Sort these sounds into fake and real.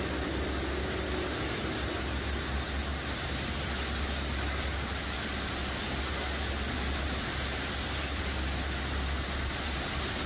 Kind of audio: real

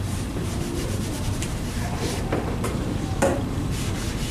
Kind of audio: fake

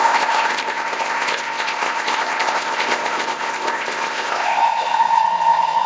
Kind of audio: fake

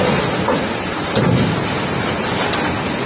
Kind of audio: real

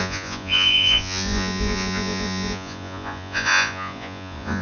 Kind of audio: fake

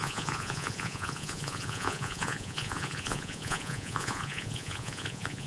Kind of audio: fake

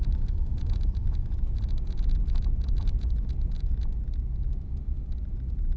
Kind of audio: fake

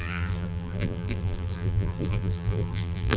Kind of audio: fake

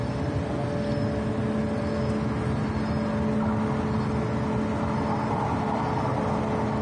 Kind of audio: real